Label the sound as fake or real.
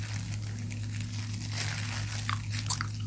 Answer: real